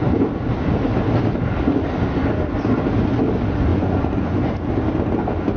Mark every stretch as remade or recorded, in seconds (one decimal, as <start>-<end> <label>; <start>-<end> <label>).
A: 0.0-3.7 recorded; 3.7-4.5 remade; 4.5-5.6 recorded